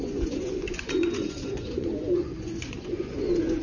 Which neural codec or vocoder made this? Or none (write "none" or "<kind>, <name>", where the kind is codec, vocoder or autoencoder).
vocoder, Vocos